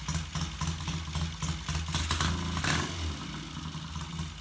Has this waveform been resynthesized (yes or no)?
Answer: no